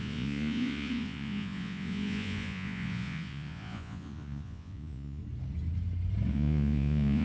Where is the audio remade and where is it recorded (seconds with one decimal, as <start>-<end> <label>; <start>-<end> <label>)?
0.0-5.2 remade; 5.2-6.3 recorded; 6.3-7.2 remade